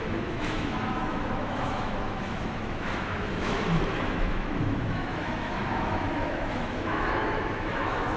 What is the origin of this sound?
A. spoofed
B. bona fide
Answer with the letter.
A